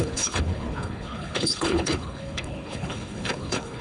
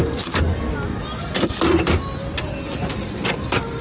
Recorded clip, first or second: second